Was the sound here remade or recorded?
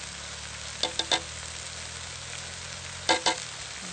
recorded